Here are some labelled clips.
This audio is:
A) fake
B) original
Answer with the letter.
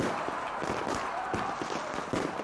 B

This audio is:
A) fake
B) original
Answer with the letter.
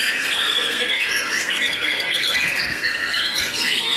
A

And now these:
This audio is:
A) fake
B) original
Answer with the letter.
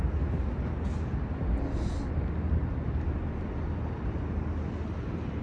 B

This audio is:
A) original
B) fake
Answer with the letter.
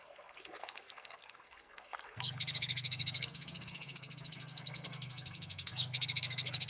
B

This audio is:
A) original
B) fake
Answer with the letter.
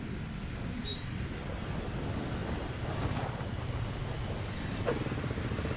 A